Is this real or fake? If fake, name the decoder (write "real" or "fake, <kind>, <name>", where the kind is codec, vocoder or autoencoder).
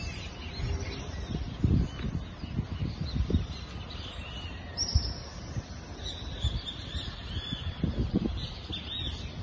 real